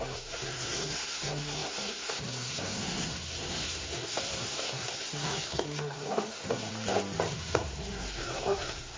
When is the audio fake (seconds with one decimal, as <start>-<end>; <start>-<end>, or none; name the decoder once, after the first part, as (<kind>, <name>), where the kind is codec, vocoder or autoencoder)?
0.0-6.7 (codec, SNAC); 7.3-9.0